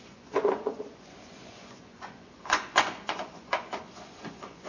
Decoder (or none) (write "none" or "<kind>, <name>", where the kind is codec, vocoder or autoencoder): vocoder, Vocos